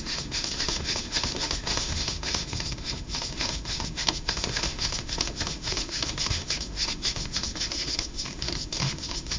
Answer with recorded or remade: remade